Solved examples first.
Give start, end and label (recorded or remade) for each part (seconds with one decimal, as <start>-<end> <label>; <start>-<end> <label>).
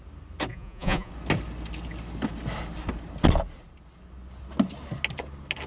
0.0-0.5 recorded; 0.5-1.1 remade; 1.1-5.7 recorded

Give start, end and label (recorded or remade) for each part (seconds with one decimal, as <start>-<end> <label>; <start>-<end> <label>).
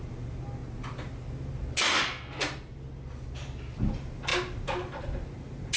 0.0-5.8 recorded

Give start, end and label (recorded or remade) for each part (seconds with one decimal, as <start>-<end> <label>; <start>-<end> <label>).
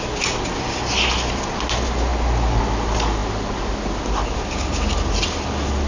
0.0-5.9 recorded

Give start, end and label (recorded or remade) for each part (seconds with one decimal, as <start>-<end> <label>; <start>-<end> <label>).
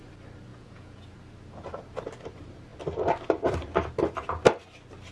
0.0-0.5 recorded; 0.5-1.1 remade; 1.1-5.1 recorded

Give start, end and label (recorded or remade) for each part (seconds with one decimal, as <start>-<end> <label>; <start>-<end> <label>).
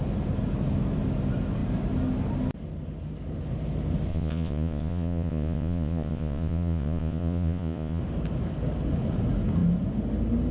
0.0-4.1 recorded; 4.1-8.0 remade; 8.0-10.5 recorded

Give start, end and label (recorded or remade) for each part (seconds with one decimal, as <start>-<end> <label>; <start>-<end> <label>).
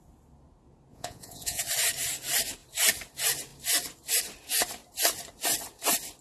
0.0-0.9 recorded; 0.9-1.6 remade; 1.6-6.2 recorded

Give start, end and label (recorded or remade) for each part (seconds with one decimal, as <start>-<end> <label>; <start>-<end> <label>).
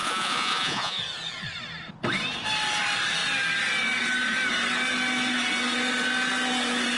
0.0-1.0 remade; 1.0-7.0 recorded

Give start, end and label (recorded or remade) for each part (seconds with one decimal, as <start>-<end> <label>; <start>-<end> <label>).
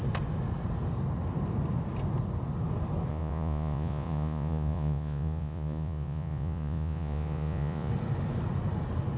0.0-3.1 recorded; 3.1-7.9 remade; 7.9-9.2 recorded